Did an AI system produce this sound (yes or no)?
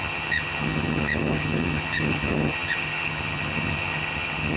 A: yes